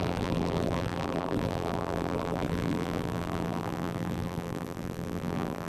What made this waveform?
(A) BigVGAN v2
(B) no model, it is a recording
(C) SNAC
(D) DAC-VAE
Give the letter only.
A